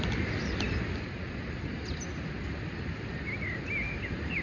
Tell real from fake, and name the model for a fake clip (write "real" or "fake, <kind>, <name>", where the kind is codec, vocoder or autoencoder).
real